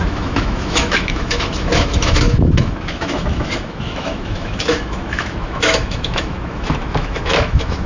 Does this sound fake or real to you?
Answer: fake